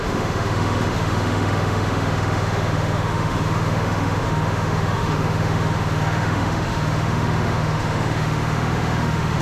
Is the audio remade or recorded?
remade